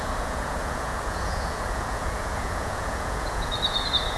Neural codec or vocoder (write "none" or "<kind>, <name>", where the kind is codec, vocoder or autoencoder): vocoder, Vocos